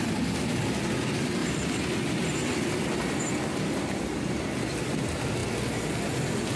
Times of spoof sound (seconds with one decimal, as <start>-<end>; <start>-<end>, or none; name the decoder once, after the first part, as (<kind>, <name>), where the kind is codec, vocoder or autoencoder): 1.4-3.3 (vocoder, BigVGAN v2)